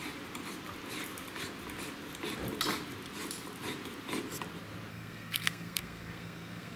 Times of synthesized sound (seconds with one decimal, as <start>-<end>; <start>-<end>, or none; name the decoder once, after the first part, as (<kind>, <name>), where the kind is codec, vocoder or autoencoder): 4.9-6.8 (codec, SNAC)